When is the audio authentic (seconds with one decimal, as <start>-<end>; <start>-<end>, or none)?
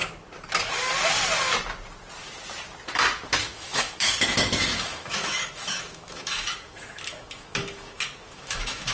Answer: 0.0-3.4